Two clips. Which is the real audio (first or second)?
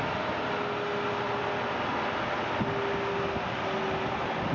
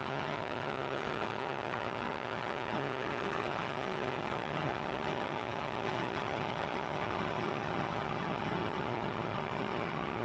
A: first